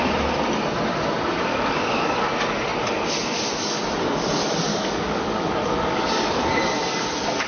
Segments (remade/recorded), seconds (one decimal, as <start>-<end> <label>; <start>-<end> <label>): 0.0-1.5 recorded; 1.5-2.2 remade; 2.2-4.7 recorded; 4.7-6.4 remade; 6.4-7.5 recorded